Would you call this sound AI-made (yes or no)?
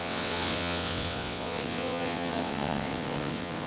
yes